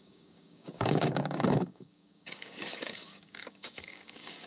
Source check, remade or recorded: remade